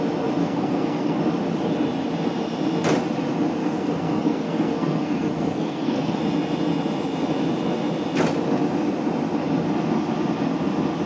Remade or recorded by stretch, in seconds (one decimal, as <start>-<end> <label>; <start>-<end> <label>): 0.0-0.4 recorded; 0.4-1.2 remade; 1.2-3.6 recorded; 3.6-6.2 remade; 6.2-11.1 recorded